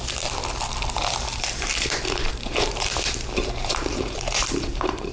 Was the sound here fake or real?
fake